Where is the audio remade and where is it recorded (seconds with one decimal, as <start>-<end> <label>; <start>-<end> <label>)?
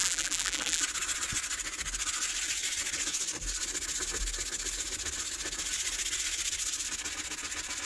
0.0-0.8 remade; 0.8-7.9 recorded